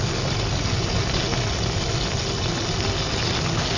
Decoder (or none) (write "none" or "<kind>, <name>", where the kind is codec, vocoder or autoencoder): none